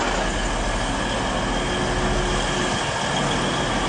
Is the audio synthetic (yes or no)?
no